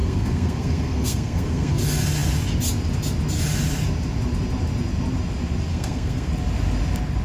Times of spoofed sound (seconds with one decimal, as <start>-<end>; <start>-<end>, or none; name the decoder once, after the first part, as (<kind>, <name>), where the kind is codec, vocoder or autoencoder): 0.0-1.8 (codec, SNAC); 5.7-6.3